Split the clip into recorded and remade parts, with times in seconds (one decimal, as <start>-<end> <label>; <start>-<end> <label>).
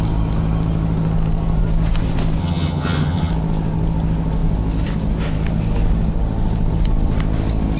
0.0-2.4 recorded; 2.4-3.3 remade; 3.3-7.8 recorded